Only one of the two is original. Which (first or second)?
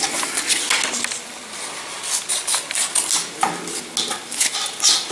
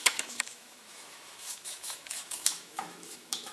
first